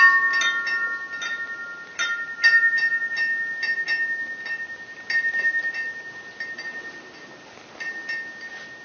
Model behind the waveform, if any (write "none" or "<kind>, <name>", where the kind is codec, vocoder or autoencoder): none